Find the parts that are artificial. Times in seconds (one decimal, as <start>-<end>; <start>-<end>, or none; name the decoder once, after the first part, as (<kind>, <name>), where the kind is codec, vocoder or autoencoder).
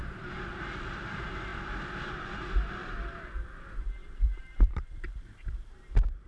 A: 0.0-0.6 (vocoder, BigVGAN v2); 4.0-6.3